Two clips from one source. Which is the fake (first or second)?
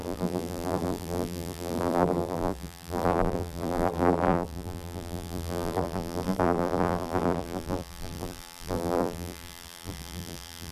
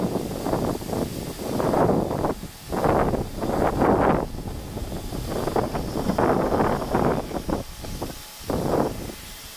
first